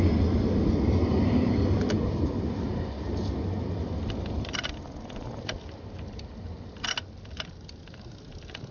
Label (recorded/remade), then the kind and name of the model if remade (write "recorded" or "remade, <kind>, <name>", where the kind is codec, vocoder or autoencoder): recorded